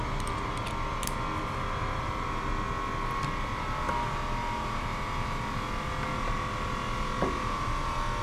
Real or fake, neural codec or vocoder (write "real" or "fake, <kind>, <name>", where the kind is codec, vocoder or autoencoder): real